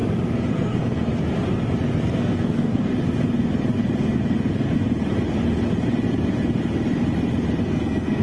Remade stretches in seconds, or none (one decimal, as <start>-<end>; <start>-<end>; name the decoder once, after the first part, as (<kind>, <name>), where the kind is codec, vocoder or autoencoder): 0.5-1.1 (codec, SNAC); 2.0-2.9; 7.6-8.2